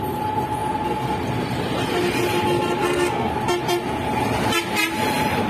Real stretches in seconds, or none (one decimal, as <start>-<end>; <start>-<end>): 0.0-2.8; 3.3-5.5